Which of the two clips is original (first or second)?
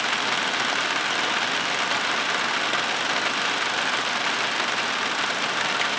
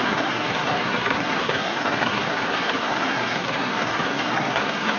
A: first